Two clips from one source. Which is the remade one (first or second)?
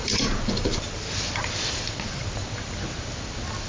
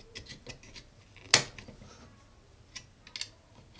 first